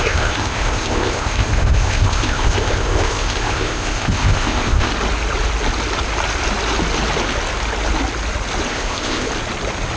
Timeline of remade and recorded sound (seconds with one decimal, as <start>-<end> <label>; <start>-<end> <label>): 0.0-4.9 remade; 4.9-8.7 recorded; 8.7-9.3 remade; 9.3-10.0 recorded